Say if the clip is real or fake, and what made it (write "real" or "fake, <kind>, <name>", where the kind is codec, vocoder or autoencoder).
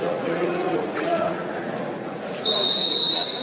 fake, vocoder, Vocos